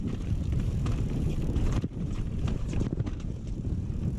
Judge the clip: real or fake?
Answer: fake